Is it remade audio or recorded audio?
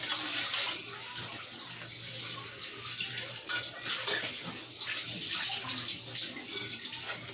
recorded